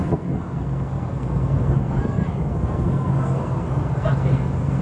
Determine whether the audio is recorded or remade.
remade